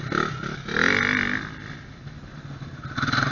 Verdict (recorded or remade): recorded